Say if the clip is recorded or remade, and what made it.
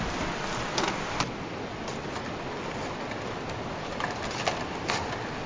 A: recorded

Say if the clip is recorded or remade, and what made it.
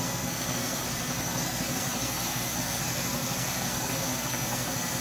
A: remade, codec, SNAC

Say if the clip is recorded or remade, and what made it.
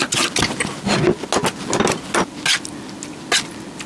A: recorded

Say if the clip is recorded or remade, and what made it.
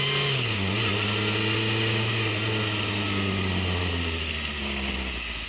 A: recorded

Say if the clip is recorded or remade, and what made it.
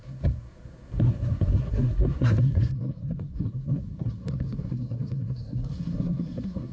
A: remade, codec, SNAC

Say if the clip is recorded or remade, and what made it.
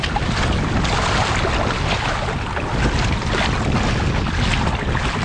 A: recorded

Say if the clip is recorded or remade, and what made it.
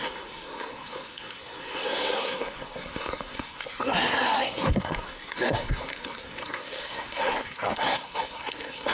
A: remade, codec, SNAC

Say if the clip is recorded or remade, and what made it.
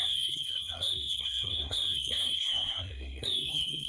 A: remade, codec, SNAC